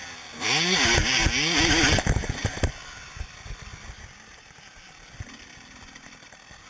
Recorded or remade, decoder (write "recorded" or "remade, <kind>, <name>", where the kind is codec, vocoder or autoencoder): recorded